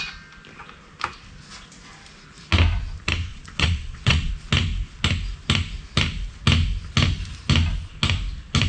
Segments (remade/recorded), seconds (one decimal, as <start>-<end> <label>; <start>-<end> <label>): 0.0-3.3 recorded; 3.3-4.3 remade; 4.3-8.7 recorded